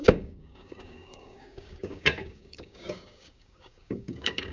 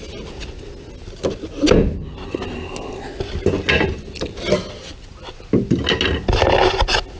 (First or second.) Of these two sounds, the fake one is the first